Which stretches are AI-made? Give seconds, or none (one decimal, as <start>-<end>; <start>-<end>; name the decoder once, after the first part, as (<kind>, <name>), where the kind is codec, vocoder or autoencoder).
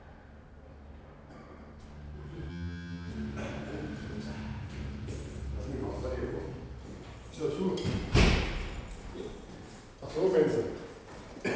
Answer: 2.5-3.1 (vocoder, HiFi-GAN)